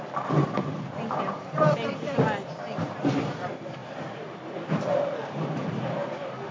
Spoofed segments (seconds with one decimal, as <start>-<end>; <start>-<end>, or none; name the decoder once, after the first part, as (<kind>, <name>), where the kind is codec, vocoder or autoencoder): 0.4-3.1 (vocoder, BigVGAN v2); 3.8-5.6